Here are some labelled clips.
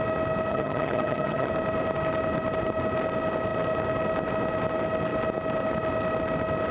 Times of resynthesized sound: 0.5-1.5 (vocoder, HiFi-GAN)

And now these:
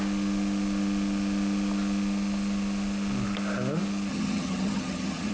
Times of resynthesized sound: 4.1-5.3 (vocoder, HiFi-GAN)

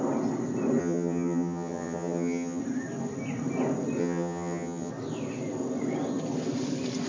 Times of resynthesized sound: 0.8-2.6 (vocoder, HiFi-GAN); 4.0-4.9

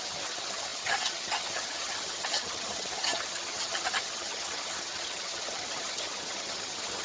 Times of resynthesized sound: 0.0-7.0 (vocoder, HiFi-GAN)

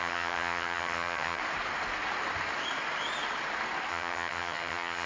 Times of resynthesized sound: 0.0-1.4 (vocoder, HiFi-GAN); 3.9-5.1

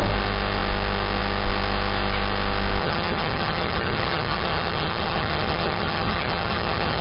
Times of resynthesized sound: 2.8-7.0 (vocoder, HiFi-GAN)

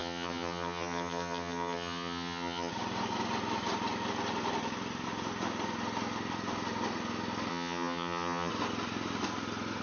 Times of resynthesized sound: 0.0-2.7 (vocoder, HiFi-GAN); 7.5-8.5